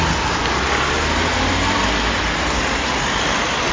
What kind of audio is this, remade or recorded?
recorded